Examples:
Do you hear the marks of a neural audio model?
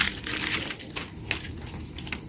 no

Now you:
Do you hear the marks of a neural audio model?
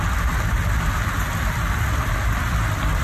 no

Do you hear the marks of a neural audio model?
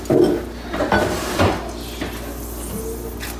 no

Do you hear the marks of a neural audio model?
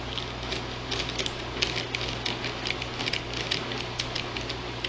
no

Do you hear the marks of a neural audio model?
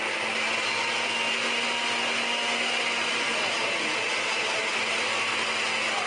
no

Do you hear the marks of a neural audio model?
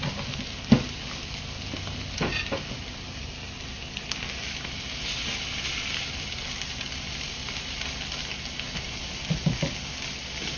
no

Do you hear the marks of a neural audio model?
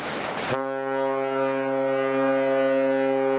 no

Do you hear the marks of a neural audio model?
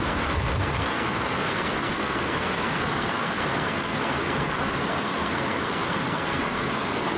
yes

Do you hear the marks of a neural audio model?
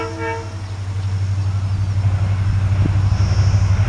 no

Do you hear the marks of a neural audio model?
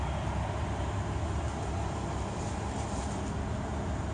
no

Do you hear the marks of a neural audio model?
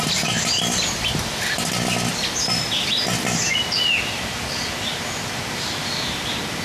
no